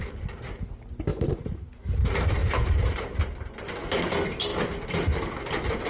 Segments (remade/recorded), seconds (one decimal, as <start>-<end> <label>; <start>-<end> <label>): 0.0-1.1 recorded; 1.1-1.7 remade; 1.7-2.4 recorded; 2.4-3.0 remade; 3.0-5.9 recorded

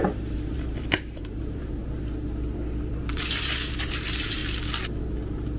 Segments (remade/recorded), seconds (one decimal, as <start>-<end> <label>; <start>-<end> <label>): 0.0-1.8 remade; 1.8-2.9 recorded; 2.9-4.4 remade; 4.4-5.6 recorded